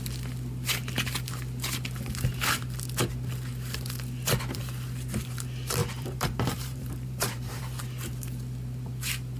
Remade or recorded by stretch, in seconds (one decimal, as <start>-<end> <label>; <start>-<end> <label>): 0.0-5.8 recorded; 5.8-7.6 remade; 7.6-9.4 recorded